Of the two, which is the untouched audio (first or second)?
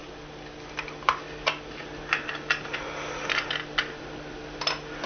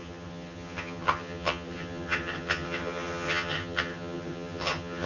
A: first